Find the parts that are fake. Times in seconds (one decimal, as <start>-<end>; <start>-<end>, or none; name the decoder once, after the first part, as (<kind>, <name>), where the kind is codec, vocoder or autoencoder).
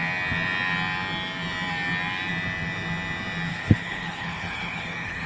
3.5-5.3 (codec, HILCodec)